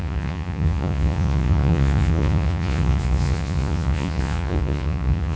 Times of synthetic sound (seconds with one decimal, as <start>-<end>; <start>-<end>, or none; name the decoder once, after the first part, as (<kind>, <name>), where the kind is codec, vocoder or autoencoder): 0.0-5.4 (vocoder, Vocos)